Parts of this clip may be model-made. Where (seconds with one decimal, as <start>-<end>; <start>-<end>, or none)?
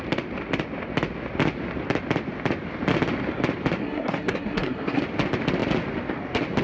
3.8-5.0